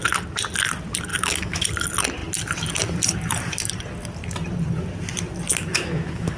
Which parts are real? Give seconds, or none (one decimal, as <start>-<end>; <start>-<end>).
0.0-1.1; 1.7-5.5